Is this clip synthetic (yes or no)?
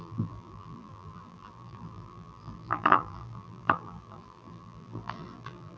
yes